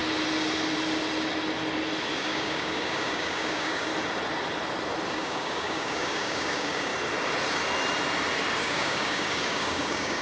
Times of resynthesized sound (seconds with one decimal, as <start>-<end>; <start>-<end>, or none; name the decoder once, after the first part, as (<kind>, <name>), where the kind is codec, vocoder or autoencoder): 2.1-3.9 (codec, DAC); 5.1-6.9; 8.6-10.2